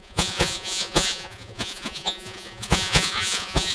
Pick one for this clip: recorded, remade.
remade